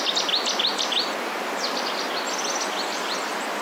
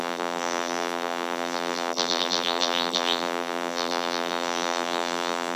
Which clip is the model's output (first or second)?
second